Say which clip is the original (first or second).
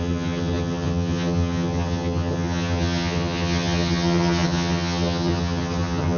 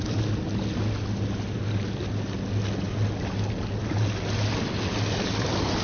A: second